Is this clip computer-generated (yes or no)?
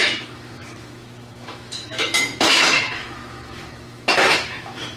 yes